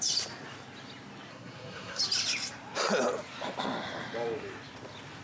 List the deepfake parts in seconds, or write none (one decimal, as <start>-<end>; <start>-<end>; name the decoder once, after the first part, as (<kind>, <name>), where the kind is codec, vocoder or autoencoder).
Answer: 1.3-2.0 (codec, SNAC)